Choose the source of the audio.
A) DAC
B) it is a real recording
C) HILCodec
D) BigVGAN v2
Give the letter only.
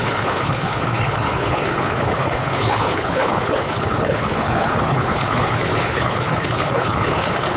C